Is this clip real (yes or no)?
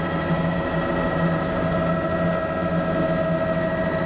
yes